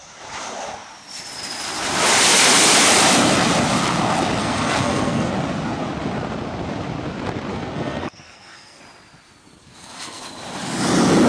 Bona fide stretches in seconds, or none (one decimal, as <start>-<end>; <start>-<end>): 0.0-4.4; 5.3-7.5; 8.8-9.6; 10.2-11.3